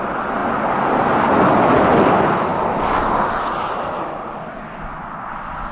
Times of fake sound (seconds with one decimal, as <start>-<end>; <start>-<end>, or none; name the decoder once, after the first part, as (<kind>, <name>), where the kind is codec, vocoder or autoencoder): none